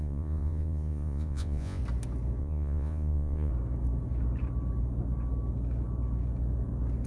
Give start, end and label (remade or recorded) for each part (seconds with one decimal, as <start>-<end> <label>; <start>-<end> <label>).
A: 0.0-1.8 remade; 1.8-2.4 recorded; 2.4-3.5 remade; 3.5-7.1 recorded